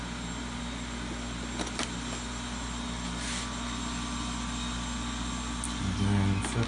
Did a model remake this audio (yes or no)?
no